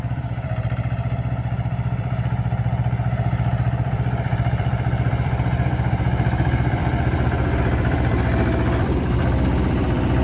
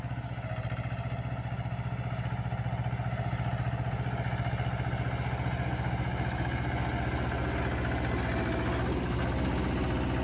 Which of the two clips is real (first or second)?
second